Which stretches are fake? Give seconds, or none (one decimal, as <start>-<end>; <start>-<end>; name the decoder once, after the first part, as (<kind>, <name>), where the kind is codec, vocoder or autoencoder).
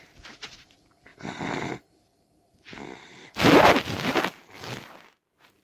none